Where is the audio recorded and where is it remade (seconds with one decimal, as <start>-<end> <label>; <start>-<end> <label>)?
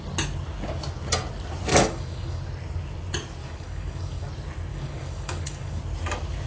0.0-1.7 recorded; 1.7-2.4 remade; 2.4-3.4 recorded; 3.4-4.3 remade; 4.3-4.7 recorded; 4.7-5.8 remade; 5.8-6.5 recorded